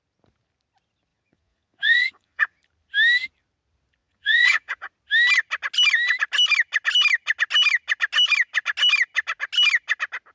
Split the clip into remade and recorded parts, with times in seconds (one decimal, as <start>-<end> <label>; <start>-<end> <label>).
0.0-1.1 recorded; 1.1-2.6 remade; 2.6-4.0 recorded; 4.0-4.9 remade; 4.9-10.3 recorded